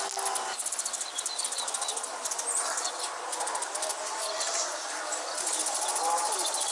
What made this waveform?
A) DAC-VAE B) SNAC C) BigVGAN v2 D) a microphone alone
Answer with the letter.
D